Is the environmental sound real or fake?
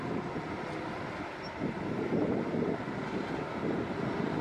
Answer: real